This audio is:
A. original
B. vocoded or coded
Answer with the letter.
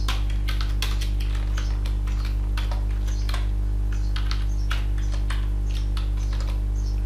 A